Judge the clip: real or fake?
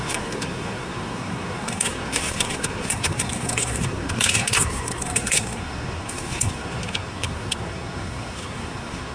fake